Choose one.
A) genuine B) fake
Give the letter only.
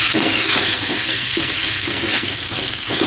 B